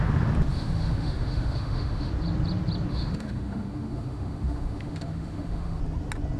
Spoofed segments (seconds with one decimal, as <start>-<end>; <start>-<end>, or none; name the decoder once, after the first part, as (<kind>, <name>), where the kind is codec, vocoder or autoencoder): 0.5-2.1 (autoencoder, DAC-VAE); 2.9-5.8